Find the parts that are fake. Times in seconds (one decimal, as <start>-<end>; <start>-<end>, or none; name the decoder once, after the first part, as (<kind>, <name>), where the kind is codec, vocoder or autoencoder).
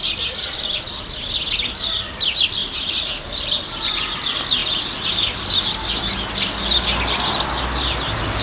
2.6-3.9 (vocoder, BigVGAN v2); 4.6-5.7